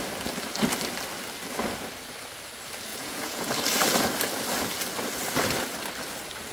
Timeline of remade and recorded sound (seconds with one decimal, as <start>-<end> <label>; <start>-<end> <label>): 0.0-2.9 recorded; 2.9-3.5 remade; 3.5-6.5 recorded